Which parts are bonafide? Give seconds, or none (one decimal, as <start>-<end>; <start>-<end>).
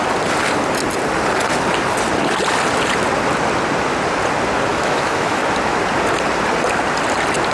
0.0-4.7; 5.4-7.5